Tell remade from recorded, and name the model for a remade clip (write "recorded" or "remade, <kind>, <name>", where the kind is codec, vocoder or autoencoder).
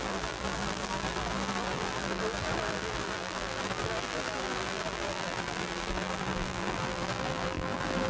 remade, vocoder, BigVGAN v2